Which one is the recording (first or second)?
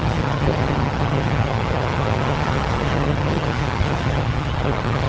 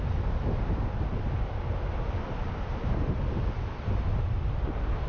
second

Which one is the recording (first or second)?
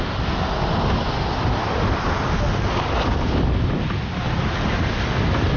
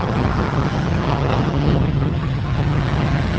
first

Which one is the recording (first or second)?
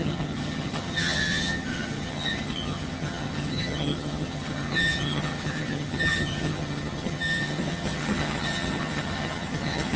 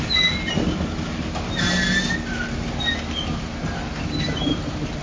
second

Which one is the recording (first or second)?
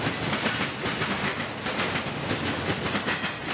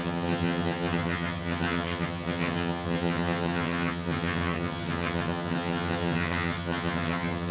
first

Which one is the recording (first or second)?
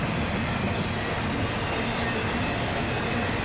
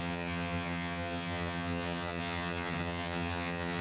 first